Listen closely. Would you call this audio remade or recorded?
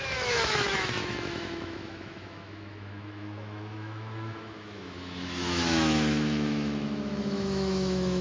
remade